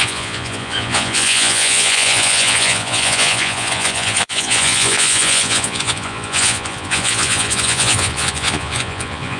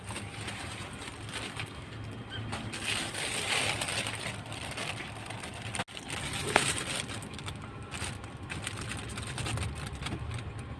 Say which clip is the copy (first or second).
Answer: first